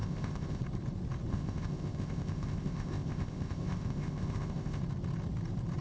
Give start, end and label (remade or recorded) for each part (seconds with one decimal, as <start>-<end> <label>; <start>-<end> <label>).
0.0-0.6 remade; 0.6-1.3 recorded; 1.3-4.8 remade; 4.8-5.8 recorded